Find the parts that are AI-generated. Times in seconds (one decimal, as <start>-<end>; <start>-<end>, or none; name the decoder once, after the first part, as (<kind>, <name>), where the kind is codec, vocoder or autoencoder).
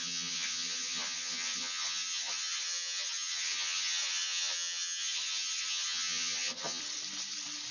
0.0-6.8 (vocoder, HiFi-GAN)